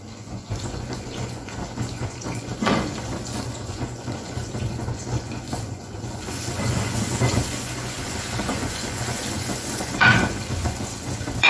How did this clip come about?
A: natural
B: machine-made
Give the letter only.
B